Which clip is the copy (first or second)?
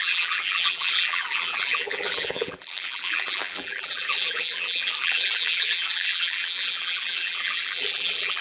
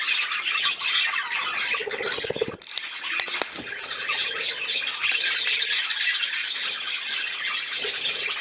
first